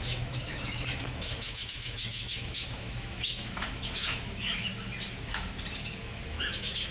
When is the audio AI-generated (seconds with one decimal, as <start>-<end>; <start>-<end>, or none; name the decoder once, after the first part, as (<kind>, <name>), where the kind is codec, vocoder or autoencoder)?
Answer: 0.0-4.7 (autoencoder, DAC-VAE); 6.0-6.9